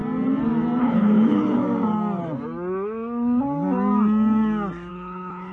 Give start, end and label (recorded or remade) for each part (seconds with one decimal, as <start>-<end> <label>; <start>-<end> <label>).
0.0-0.8 recorded; 0.8-1.6 remade; 1.6-4.9 recorded; 4.9-5.5 remade